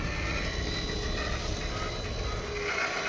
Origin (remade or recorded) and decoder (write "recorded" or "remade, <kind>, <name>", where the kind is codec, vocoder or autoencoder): recorded